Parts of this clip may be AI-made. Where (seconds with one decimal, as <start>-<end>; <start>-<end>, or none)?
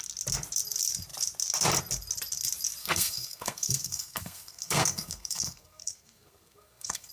2.8-7.1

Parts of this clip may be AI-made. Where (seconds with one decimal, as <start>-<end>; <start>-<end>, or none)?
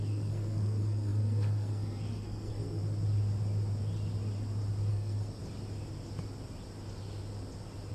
0.0-2.8; 4.9-5.4